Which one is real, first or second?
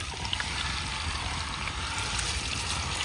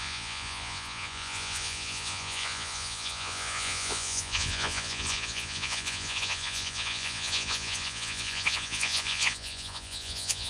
first